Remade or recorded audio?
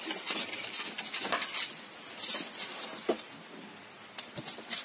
recorded